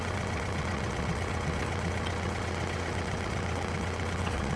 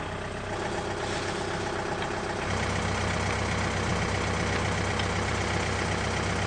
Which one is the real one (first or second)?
second